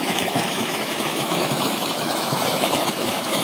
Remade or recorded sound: remade